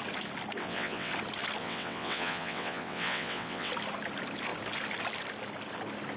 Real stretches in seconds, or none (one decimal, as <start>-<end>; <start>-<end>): 0.0-0.6; 1.1-1.6; 3.7-6.2